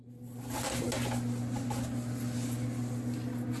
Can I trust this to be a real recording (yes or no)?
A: yes